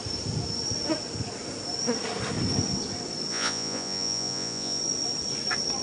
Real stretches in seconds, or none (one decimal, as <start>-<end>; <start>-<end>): 0.0-3.3; 4.8-5.8